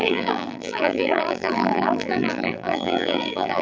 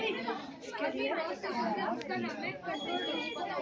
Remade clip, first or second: first